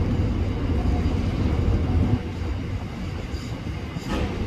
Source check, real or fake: real